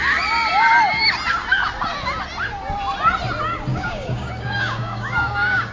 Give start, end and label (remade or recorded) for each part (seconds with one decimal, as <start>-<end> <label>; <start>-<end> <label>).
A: 0.0-3.7 recorded; 3.7-5.7 remade